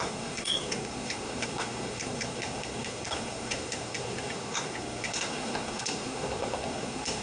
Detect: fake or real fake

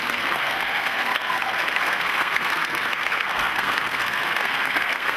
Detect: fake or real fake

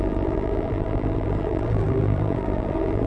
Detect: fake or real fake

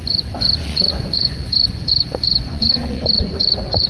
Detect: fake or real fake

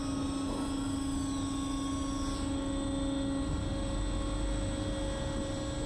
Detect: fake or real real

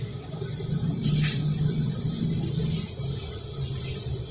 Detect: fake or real real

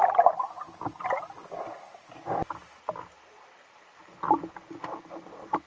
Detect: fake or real real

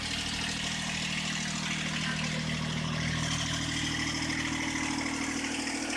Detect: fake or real real